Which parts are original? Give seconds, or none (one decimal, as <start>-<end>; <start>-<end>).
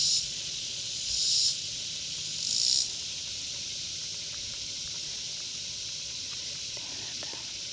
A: 1.5-6.0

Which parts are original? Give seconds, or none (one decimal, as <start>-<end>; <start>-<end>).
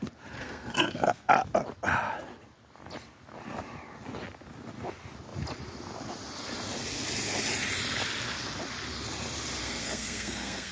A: 0.0-0.4; 1.3-9.6